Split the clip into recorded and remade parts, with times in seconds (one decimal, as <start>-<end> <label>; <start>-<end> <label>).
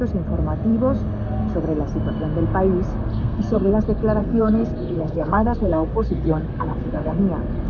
0.0-3.1 recorded; 3.1-3.7 remade; 3.7-4.2 recorded; 4.2-7.2 remade; 7.2-7.7 recorded